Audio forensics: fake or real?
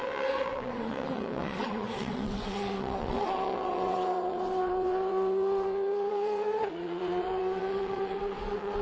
fake